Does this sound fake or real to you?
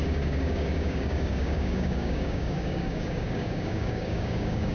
fake